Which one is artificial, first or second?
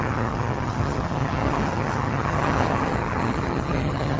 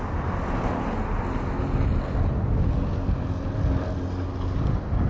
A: first